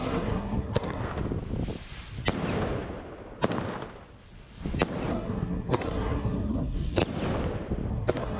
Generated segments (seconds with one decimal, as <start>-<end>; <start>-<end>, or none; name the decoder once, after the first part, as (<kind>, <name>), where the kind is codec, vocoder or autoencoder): 0.0-1.0 (codec, SNAC); 5.1-7.0; 7.9-8.4